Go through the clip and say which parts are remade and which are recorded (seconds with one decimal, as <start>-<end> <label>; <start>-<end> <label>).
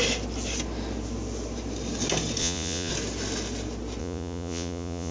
0.0-2.4 recorded; 2.4-2.9 remade; 2.9-4.0 recorded; 4.0-5.1 remade